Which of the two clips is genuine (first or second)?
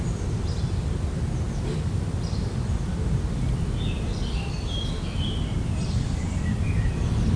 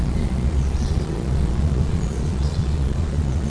first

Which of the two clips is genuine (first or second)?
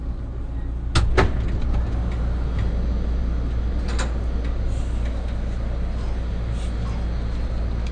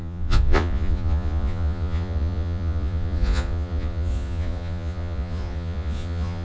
first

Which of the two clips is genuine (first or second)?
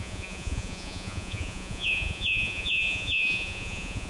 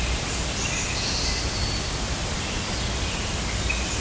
second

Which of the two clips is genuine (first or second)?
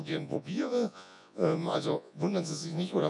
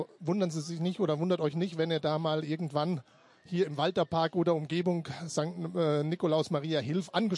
second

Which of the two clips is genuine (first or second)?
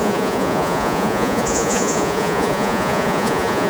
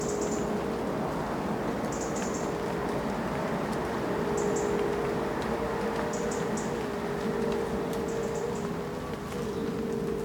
second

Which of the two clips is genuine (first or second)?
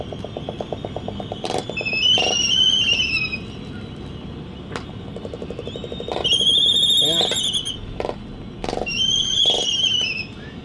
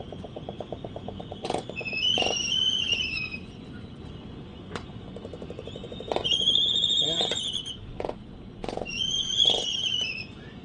first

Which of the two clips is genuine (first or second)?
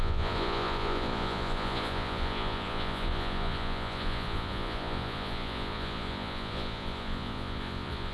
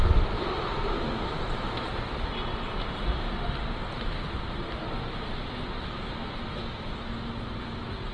second